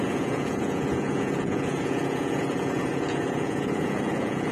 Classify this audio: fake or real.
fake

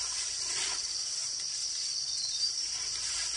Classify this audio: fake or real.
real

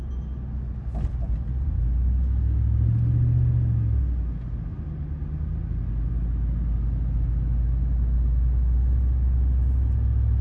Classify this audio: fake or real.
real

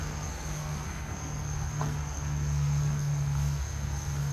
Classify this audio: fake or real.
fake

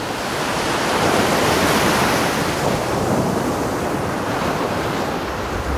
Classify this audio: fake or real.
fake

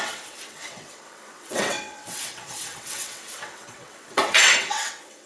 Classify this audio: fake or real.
fake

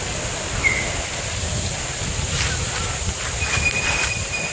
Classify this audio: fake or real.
real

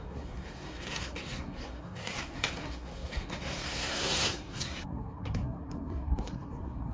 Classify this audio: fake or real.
fake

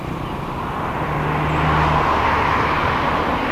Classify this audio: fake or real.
real